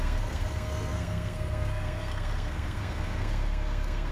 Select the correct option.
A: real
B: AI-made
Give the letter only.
B